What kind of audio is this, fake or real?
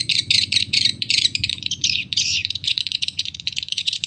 fake